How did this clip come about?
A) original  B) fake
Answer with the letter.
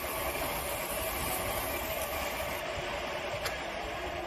A